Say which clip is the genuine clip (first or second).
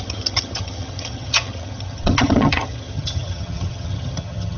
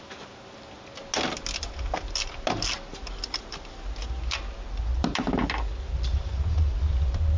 second